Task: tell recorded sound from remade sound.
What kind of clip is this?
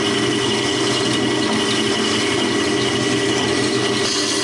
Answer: recorded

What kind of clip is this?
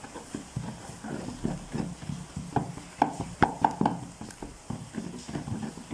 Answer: recorded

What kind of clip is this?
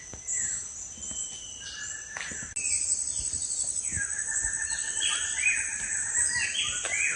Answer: recorded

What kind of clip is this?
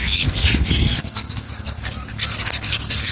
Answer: remade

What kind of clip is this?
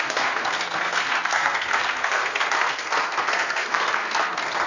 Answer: remade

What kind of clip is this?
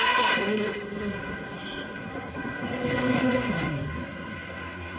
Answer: remade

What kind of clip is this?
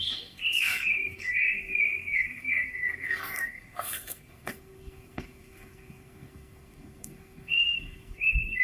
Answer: remade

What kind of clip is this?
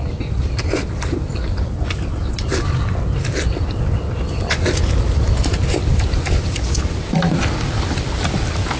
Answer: recorded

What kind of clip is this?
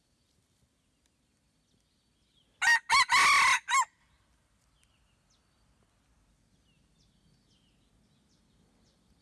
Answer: recorded